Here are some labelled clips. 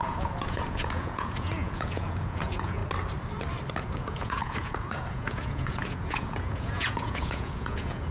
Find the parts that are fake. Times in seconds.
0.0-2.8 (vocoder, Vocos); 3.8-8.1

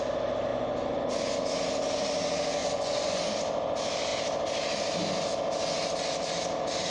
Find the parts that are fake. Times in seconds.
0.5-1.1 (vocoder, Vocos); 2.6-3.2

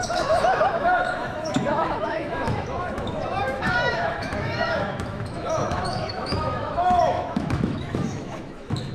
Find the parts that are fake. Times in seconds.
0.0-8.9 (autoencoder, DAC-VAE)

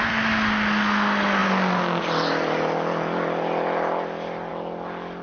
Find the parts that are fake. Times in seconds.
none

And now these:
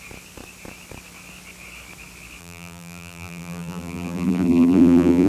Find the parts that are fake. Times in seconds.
2.4-5.3 (vocoder, BigVGAN v2)

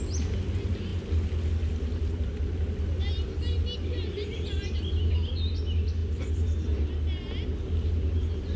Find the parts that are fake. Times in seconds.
none

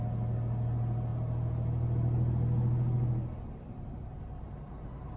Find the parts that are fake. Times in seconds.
none